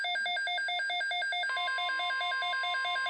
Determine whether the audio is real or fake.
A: real